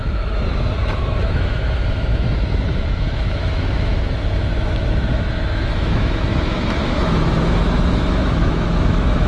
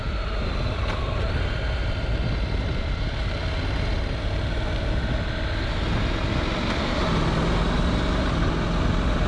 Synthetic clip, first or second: first